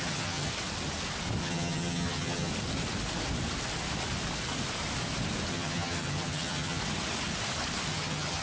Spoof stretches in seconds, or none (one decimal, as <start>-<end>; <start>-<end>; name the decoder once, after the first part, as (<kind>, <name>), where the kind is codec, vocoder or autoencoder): 0.0-0.5 (vocoder, HiFi-GAN); 1.4-2.5; 5.5-6.8; 7.9-8.4